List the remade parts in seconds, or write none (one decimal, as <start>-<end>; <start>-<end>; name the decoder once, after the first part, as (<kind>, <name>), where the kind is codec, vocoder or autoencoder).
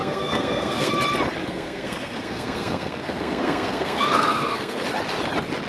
0.0-0.9 (codec, SNAC); 1.4-4.8